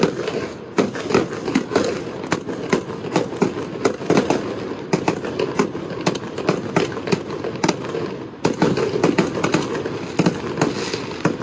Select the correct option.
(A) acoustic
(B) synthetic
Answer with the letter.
A